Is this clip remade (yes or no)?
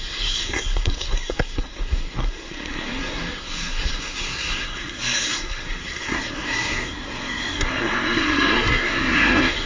yes